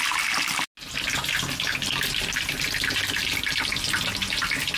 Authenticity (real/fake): real